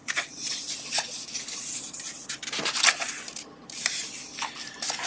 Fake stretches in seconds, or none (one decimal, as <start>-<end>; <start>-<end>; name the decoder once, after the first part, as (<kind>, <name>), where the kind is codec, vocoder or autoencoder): 0.0-1.8 (vocoder, Vocos)